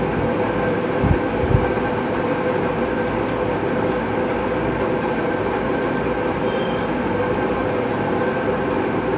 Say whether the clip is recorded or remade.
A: recorded